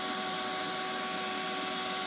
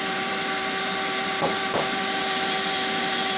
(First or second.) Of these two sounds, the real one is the first